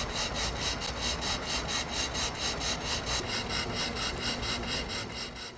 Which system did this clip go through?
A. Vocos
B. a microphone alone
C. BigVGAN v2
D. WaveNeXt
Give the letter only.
B